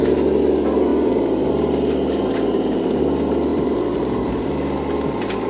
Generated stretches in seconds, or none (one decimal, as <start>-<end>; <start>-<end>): 0.9-1.5; 3.5-4.0